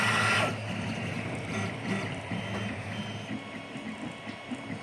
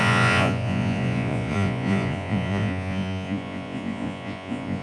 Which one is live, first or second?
first